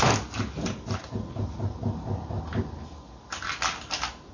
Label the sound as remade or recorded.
recorded